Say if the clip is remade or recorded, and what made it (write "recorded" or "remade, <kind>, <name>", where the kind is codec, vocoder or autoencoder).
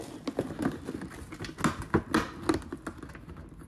recorded